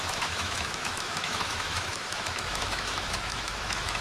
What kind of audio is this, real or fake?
fake